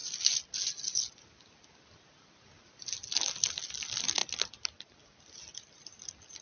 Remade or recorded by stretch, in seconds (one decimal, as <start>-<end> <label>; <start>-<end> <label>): 0.0-6.4 recorded